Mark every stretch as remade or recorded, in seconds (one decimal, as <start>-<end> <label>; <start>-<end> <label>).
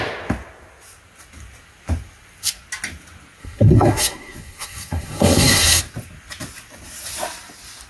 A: 0.0-3.4 recorded; 3.4-5.8 remade; 5.8-7.9 recorded